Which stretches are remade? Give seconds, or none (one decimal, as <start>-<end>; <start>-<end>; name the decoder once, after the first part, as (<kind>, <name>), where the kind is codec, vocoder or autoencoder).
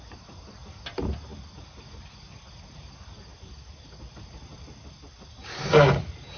none